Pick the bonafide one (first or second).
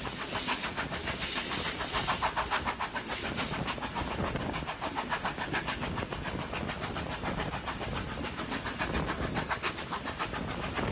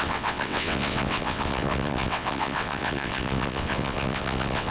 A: first